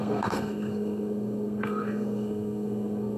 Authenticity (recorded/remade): remade